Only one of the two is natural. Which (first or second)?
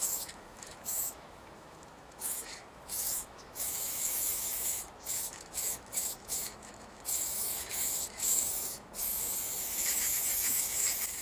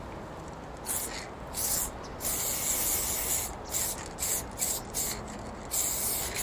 second